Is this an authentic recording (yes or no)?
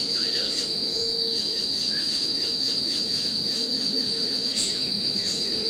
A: no